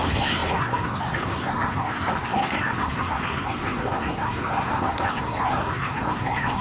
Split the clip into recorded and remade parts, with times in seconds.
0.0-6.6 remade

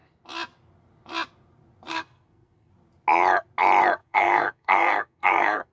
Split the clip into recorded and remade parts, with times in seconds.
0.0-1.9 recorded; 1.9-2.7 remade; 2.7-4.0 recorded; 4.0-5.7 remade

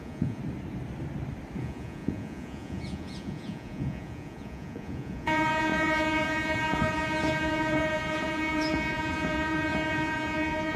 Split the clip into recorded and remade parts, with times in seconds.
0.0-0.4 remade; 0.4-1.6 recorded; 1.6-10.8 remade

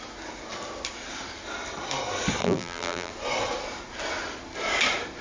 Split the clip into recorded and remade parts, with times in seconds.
0.0-2.4 recorded; 2.4-3.1 remade; 3.1-5.2 recorded

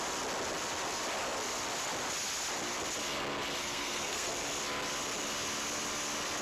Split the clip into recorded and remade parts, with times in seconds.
0.0-3.6 recorded; 3.6-4.3 remade; 4.3-6.4 recorded